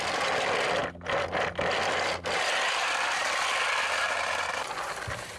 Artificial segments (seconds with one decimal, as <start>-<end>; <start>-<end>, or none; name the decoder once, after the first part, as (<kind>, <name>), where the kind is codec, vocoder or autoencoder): none